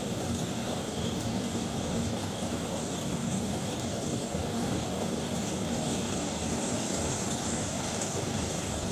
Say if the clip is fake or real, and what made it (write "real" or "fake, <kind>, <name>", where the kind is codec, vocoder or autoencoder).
fake, codec, DAC